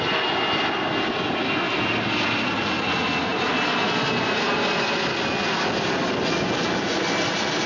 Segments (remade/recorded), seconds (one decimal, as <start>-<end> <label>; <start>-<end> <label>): 0.0-7.7 recorded